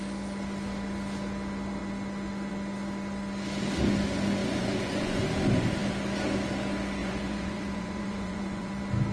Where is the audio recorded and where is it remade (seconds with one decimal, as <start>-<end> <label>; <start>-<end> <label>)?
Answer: 0.0-4.4 recorded; 4.4-5.2 remade; 5.2-7.0 recorded; 7.0-8.7 remade; 8.7-9.1 recorded